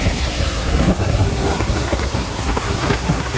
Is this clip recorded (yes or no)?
no